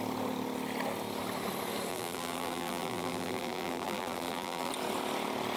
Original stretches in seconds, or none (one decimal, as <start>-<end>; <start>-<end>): 0.0-1.9; 4.7-5.6